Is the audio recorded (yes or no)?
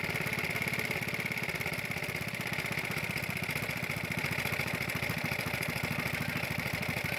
yes